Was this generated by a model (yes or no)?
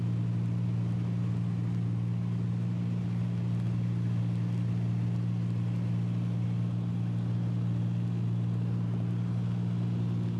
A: no